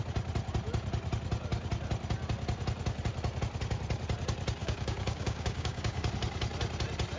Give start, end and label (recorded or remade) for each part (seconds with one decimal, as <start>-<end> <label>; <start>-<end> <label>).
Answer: 0.0-4.6 recorded; 4.6-6.1 remade; 6.1-7.2 recorded